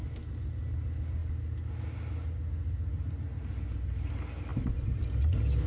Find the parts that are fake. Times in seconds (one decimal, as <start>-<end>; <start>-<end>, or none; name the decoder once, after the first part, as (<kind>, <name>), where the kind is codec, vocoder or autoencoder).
4.5-5.0 (vocoder, BigVGAN v2)